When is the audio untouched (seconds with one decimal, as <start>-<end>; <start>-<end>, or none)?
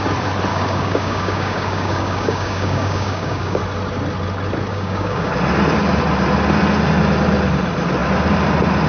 0.0-0.5; 3.6-4.7; 5.3-8.9